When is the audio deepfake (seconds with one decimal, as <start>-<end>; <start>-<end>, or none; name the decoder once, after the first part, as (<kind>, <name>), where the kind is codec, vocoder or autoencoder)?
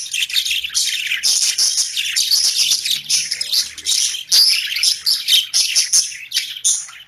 0.0-4.3 (vocoder, BigVGAN v2)